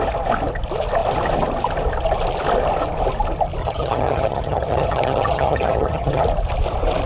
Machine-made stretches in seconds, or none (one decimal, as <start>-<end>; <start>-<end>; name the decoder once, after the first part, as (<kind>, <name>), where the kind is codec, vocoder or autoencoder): 3.6-6.2 (vocoder, HiFi-GAN)